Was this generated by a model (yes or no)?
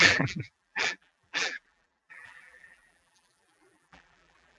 yes